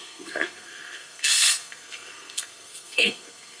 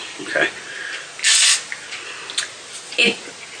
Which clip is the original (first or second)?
second